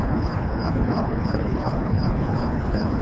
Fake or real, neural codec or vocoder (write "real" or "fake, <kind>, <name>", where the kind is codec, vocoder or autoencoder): fake, codec, HILCodec